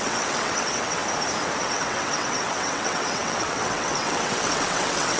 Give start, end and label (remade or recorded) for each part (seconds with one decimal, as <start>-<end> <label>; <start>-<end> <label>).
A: 0.0-1.0 remade; 1.0-1.6 recorded; 1.6-5.2 remade